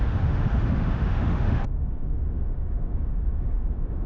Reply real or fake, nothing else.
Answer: fake